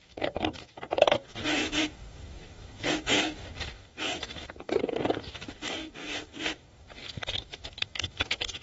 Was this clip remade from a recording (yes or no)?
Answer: yes